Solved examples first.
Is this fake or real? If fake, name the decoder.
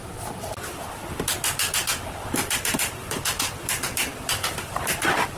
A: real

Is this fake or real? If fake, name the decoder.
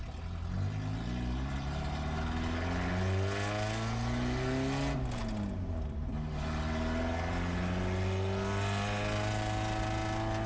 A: real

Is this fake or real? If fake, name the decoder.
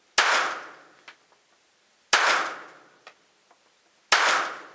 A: real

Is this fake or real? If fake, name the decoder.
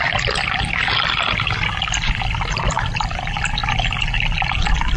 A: real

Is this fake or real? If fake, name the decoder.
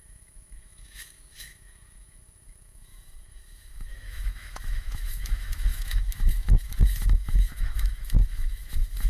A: fake, autoencoder, DAC-VAE